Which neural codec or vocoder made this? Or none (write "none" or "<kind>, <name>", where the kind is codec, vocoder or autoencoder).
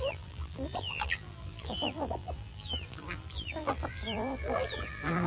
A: vocoder, BigVGAN v2